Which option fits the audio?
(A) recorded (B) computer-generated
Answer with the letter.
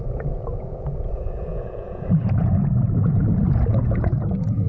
B